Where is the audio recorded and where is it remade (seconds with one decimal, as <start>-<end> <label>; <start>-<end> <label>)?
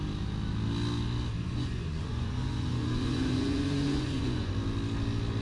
0.0-1.3 recorded; 1.3-4.5 remade; 4.5-5.4 recorded